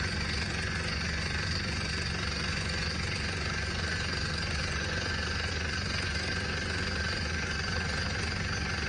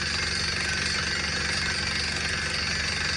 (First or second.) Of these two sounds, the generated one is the first